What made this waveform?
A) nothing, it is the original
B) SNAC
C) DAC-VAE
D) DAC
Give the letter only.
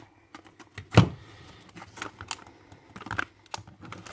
A